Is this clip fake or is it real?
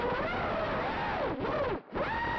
fake